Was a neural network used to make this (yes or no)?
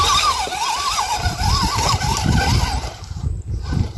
no